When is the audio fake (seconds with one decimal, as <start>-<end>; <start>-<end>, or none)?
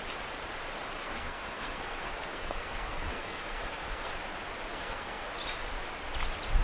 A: 1.0-4.1; 4.7-5.3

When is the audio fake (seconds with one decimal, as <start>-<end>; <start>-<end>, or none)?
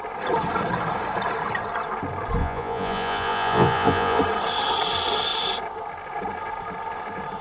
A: 2.4-4.2